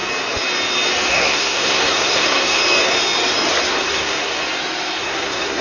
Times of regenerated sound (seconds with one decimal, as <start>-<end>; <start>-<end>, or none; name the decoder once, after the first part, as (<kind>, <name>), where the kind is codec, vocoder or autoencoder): 1.1-2.6 (codec, SNAC); 3.7-4.3; 5.0-5.6